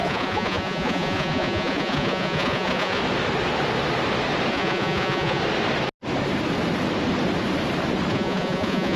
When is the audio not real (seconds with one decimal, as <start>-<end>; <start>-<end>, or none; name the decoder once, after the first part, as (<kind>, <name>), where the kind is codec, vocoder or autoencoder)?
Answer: 0.0-3.0 (vocoder, Vocos); 4.5-5.4; 8.1-9.0

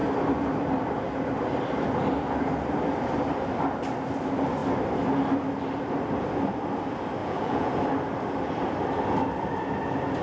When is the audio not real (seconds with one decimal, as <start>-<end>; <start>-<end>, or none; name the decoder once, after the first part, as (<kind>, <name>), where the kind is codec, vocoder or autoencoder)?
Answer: 7.2-7.7 (vocoder, Vocos)

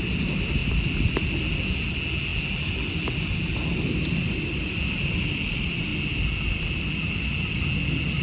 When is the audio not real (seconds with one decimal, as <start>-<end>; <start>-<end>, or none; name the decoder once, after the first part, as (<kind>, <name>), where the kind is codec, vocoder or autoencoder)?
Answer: none

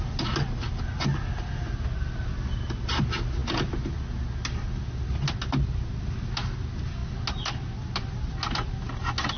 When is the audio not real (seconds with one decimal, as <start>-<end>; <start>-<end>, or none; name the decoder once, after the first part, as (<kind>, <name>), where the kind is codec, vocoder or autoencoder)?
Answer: none

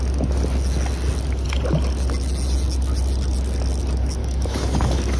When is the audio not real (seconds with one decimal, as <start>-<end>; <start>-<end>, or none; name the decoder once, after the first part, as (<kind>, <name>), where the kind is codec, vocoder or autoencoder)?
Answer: 4.2-5.2 (codec, DAC)

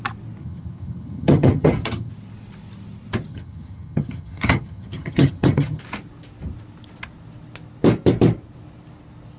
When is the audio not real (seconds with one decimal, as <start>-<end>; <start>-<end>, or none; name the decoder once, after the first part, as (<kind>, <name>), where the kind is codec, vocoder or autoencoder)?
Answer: 0.4-2.1 (vocoder, HiFi-GAN); 3.3-5.8

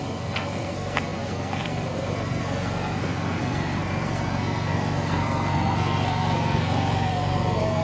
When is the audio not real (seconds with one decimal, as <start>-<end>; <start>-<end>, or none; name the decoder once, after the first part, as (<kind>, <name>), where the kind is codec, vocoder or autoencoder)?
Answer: 0.0-7.8 (codec, SNAC)

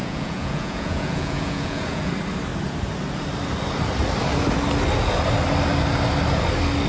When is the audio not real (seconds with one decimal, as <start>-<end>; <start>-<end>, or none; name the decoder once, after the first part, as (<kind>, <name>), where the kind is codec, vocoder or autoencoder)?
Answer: 0.0-2.1 (vocoder, Vocos)